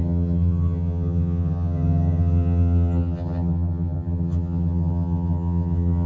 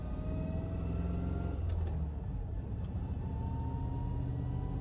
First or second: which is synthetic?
first